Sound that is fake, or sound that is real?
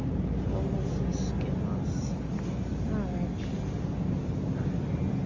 real